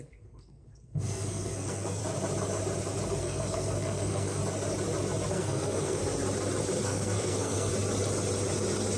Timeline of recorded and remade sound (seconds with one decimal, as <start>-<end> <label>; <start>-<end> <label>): 0.0-2.0 remade; 2.0-3.1 recorded; 3.1-4.4 remade; 4.4-5.3 recorded; 5.3-6.0 remade; 6.0-6.8 recorded; 6.8-7.7 remade; 7.7-9.0 recorded